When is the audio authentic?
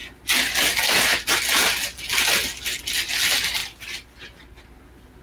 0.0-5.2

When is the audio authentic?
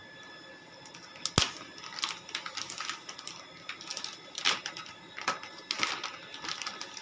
0.0-3.9; 5.0-7.0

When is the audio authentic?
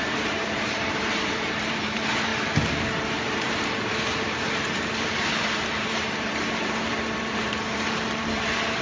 2.3-3.1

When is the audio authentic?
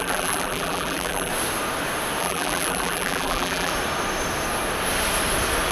1.3-2.2; 3.7-5.7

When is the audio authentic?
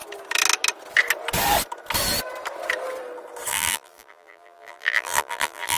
0.0-3.5